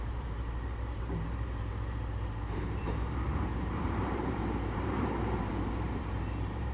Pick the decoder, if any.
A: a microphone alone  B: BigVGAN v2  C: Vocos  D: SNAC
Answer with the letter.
B